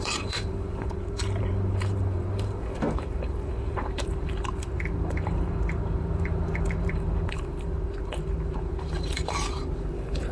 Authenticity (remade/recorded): remade